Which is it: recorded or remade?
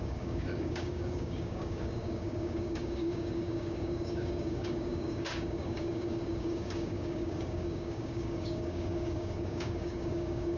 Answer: remade